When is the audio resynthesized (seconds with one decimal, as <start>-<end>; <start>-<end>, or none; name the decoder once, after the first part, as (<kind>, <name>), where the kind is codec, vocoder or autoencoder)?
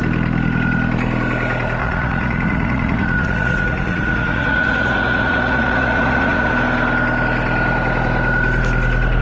1.8-6.5 (vocoder, Vocos)